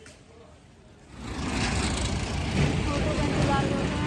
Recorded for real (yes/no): yes